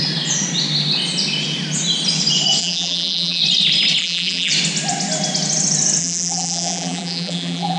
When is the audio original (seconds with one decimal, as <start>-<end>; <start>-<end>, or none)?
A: 0.0-2.6; 3.4-4.0; 4.5-6.0